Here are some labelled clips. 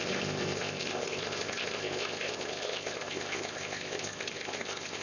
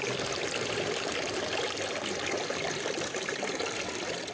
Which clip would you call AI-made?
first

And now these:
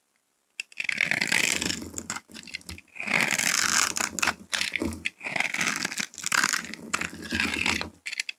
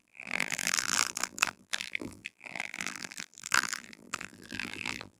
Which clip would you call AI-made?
second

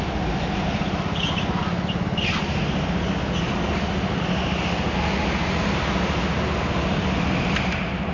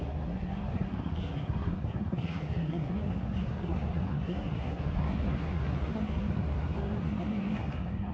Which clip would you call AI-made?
second